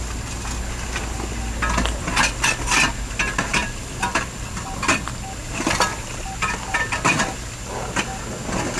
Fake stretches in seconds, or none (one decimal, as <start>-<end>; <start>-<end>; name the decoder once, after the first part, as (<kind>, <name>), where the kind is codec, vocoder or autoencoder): 3.6-8.2 (vocoder, BigVGAN v2)